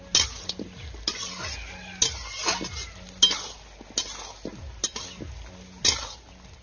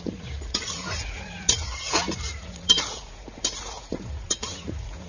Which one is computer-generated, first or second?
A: second